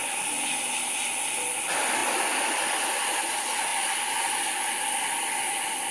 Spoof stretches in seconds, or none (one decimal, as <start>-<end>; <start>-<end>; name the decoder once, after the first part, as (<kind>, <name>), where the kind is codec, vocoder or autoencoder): none